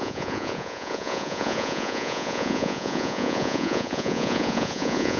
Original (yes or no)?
no